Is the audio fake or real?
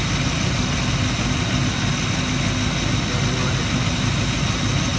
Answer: real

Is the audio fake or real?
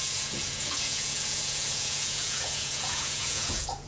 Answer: fake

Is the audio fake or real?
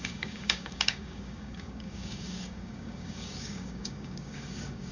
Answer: fake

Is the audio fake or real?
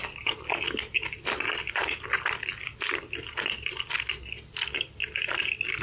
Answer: real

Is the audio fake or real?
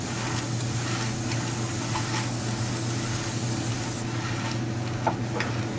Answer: real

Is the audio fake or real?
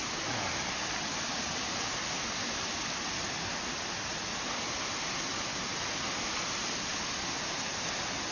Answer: real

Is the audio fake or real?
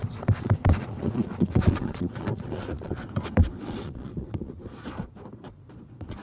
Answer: fake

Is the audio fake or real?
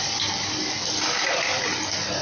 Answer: real